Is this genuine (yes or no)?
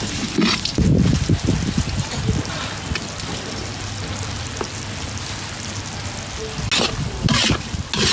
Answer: yes